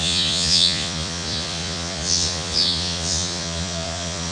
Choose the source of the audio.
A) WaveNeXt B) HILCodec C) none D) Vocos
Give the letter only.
D